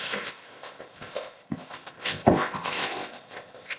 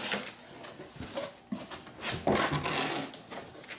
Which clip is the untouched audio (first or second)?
second